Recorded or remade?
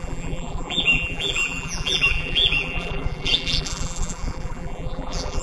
remade